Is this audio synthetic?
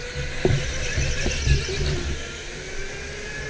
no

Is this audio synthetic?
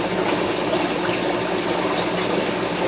no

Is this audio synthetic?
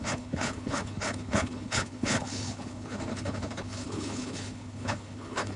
yes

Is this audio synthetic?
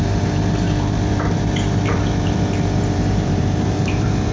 yes